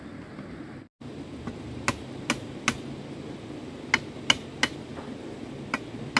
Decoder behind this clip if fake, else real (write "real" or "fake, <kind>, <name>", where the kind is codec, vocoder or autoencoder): real